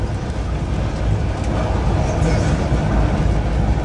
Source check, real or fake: real